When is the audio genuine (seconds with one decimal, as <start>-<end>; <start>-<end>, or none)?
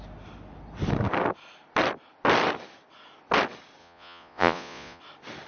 0.0-3.8; 5.0-5.5